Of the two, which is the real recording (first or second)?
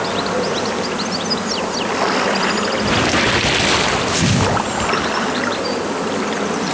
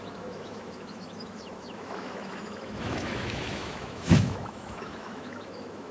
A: first